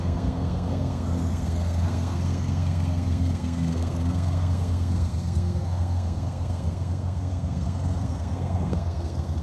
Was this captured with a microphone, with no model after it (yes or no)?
no